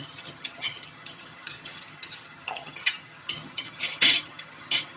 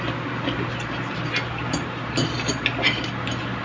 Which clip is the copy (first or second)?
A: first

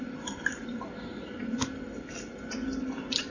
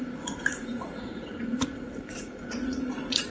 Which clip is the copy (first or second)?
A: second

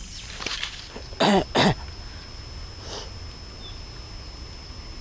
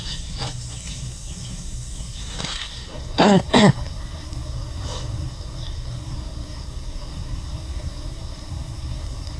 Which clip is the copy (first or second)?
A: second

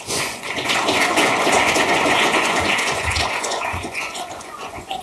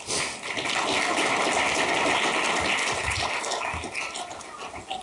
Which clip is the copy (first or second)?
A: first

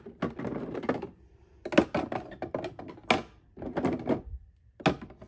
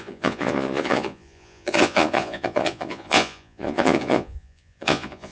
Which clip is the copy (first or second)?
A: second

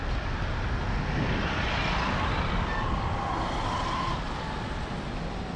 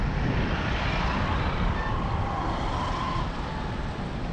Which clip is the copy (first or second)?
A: second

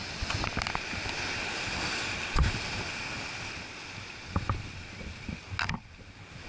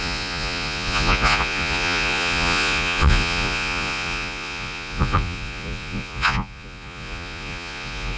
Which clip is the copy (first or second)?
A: second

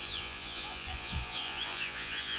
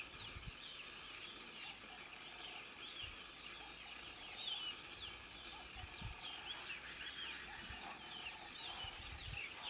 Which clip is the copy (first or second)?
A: first